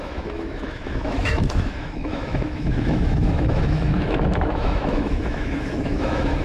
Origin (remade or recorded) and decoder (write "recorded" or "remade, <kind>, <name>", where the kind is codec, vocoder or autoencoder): remade, autoencoder, DAC-VAE